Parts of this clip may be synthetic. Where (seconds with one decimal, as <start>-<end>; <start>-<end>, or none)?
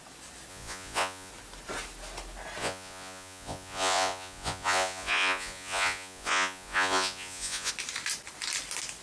0.5-1.3; 2.6-7.7